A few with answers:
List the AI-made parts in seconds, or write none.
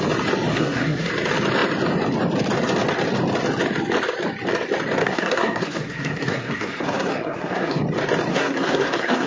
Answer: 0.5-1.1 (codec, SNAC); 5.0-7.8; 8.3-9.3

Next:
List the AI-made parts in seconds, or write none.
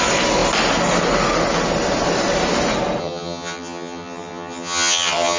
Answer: 3.0-5.4 (vocoder, HiFi-GAN)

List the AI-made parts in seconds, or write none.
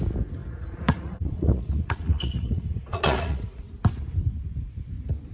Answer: 0.4-3.6 (vocoder, Vocos)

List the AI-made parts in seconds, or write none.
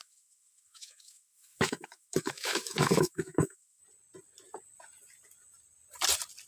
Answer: 0.0-3.8 (autoencoder, DAC-VAE)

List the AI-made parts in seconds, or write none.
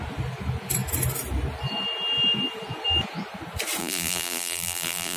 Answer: 3.8-5.2 (vocoder, BigVGAN v2)